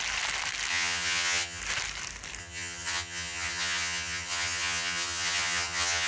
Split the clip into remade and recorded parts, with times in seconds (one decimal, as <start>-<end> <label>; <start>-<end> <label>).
0.0-0.7 recorded; 0.7-1.6 remade; 1.6-2.4 recorded; 2.4-6.1 remade